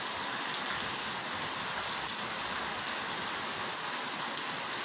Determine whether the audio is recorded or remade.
recorded